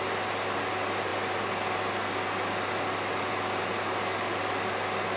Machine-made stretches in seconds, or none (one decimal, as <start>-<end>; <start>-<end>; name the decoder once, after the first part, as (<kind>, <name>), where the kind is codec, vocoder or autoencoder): none